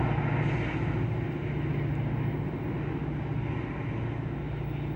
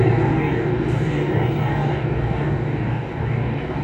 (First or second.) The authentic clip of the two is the first